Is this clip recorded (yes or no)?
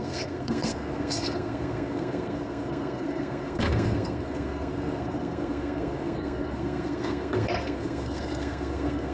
no